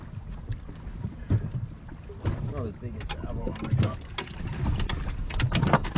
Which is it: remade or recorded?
recorded